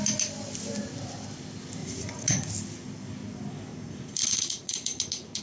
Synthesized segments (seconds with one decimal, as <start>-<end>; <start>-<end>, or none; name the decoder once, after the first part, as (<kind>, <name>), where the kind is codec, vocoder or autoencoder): 1.8-2.5 (vocoder, Vocos); 3.7-5.4